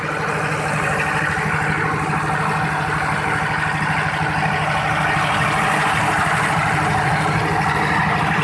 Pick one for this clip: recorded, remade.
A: recorded